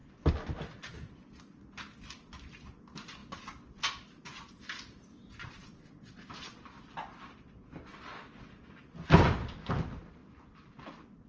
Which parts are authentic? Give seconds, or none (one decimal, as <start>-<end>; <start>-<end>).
0.0-5.4; 6.2-11.3